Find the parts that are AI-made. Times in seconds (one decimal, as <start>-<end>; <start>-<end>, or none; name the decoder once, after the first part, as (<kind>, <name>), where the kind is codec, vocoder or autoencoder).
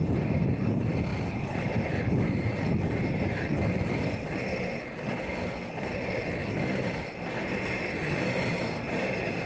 none